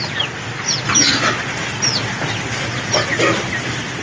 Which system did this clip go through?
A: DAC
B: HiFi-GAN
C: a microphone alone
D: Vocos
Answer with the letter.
C